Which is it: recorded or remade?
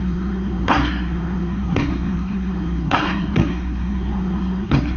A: remade